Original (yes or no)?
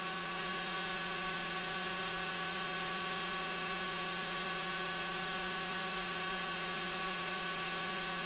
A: no